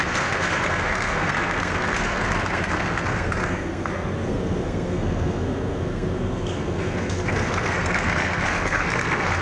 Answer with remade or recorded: remade